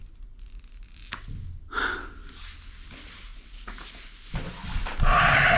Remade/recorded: recorded